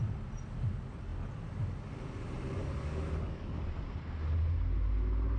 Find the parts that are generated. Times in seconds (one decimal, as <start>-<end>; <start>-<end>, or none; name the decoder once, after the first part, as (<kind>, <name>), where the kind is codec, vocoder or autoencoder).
2.6-3.6 (codec, DAC)